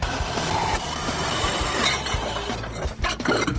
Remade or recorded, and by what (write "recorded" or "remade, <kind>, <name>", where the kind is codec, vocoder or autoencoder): recorded